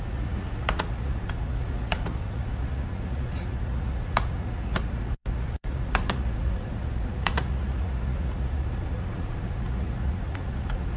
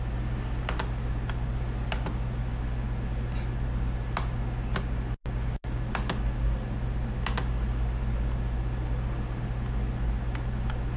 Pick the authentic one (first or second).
second